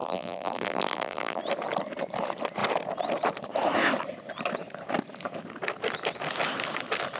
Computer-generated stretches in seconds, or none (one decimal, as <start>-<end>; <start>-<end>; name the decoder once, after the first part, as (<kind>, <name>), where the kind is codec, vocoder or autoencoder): 0.0-1.4 (vocoder, BigVGAN v2)